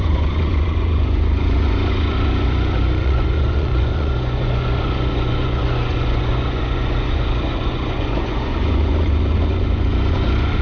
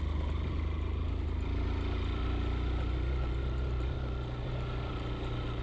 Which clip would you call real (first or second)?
second